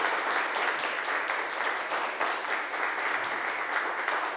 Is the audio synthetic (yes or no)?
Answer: no